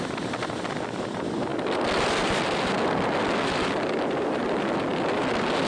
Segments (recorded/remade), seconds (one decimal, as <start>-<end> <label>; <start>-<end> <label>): 0.0-5.7 recorded